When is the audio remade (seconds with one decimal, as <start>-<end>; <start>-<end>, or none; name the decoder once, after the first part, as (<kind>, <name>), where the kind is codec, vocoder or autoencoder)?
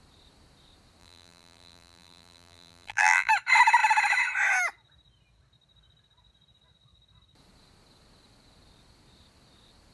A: 1.0-3.3 (vocoder, BigVGAN v2)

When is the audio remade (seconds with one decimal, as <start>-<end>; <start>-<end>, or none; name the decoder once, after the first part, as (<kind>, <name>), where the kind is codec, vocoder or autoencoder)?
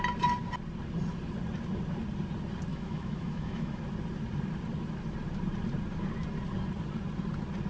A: 2.7-3.8 (autoencoder, DAC-VAE)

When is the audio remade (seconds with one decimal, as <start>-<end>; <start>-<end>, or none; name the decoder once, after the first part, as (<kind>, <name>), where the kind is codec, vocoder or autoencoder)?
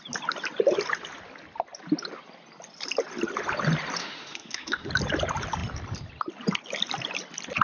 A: 4.0-4.9 (autoencoder, DAC-VAE)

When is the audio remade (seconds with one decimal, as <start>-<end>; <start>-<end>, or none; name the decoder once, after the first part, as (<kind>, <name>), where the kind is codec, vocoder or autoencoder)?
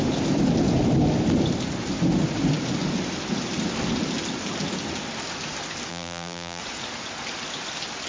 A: 5.9-6.6 (vocoder, BigVGAN v2)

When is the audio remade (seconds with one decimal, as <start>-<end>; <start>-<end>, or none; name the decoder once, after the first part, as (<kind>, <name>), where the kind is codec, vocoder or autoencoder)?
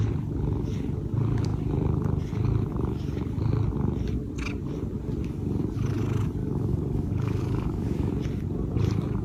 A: 6.4-8.1 (codec, DAC)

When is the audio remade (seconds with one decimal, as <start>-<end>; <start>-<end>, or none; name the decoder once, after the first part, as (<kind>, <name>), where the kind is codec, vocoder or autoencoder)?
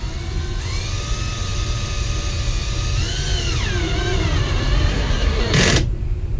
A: 4.9-5.4 (codec, SNAC)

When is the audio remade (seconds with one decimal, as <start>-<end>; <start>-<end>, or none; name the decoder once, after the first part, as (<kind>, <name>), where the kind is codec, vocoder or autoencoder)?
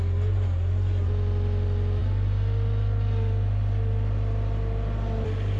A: none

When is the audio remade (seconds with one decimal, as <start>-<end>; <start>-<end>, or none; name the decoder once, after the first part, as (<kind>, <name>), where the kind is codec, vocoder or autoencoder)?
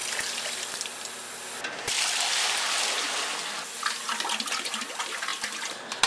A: none